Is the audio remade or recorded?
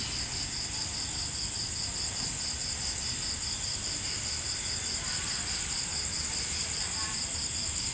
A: recorded